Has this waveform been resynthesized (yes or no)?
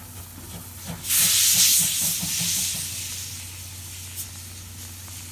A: no